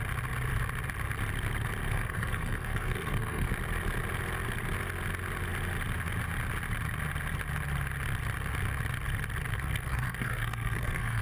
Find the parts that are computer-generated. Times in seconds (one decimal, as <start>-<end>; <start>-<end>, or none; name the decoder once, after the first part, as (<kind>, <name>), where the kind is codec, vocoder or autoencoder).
1.9-3.5 (codec, SNAC); 9.5-11.2

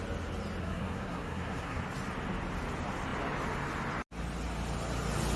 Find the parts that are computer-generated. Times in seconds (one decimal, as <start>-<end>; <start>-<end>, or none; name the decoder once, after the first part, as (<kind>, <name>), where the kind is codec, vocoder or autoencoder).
0.6-1.8 (codec, SNAC)

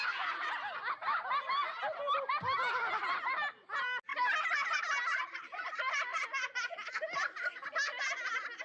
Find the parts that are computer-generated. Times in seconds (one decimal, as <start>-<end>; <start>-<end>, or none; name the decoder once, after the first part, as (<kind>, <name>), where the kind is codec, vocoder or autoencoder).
none

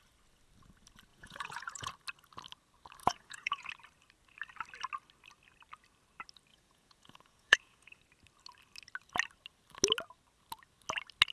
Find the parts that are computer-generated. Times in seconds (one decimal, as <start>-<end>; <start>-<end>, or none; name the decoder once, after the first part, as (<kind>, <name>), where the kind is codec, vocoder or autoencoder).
1.1-1.9 (vocoder, Vocos); 3.0-3.7; 6.5-8.0

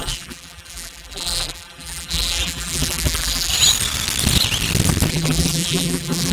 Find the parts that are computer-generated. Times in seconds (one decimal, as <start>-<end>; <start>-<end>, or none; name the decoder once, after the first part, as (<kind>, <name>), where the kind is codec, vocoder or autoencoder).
0.0-3.5 (vocoder, BigVGAN v2); 5.1-6.3

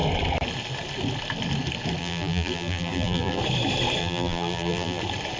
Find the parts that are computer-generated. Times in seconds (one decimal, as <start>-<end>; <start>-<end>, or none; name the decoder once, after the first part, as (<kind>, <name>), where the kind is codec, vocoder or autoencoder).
2.0-3.4 (vocoder, BigVGAN v2); 4.0-5.0